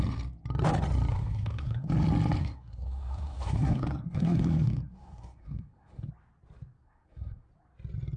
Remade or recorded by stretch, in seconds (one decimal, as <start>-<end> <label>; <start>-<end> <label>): 0.0-1.1 recorded; 1.1-1.9 remade; 1.9-2.4 recorded; 2.4-6.1 remade; 6.1-6.8 recorded; 6.8-7.5 remade; 7.5-8.2 recorded

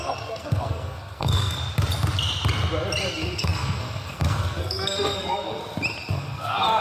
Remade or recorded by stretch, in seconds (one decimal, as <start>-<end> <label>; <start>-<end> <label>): 0.0-1.6 remade; 1.6-3.1 recorded; 3.1-5.6 remade; 5.6-6.1 recorded; 6.1-6.8 remade